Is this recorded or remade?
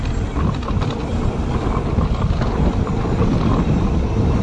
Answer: recorded